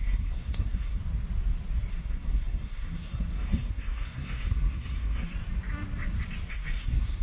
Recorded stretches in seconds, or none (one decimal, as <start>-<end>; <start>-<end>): 1.0-1.9; 5.3-6.5